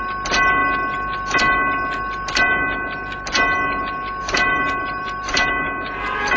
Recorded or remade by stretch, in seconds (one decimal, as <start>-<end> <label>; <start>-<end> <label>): 0.0-4.2 recorded; 4.2-5.5 remade; 5.5-6.4 recorded